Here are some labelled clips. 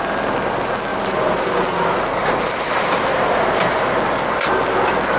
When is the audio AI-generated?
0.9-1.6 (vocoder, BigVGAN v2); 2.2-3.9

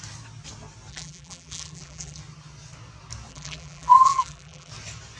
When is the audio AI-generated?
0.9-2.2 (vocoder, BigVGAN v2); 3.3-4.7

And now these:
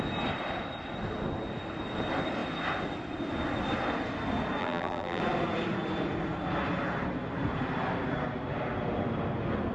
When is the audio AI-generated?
4.6-5.2 (vocoder, BigVGAN v2)

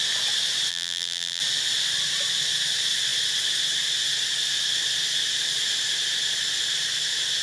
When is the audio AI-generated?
0.7-1.4 (vocoder, BigVGAN v2)

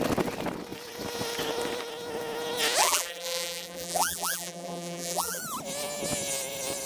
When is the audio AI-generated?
2.8-5.4 (vocoder, BigVGAN v2)

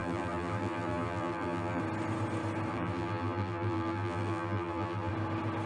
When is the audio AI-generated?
0.0-1.8 (vocoder, BigVGAN v2); 2.7-5.1

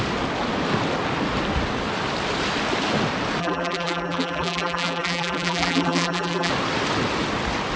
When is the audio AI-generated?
3.4-6.5 (vocoder, BigVGAN v2)